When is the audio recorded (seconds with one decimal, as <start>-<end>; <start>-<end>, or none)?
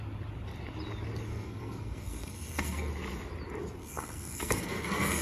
0.0-1.3; 2.9-3.8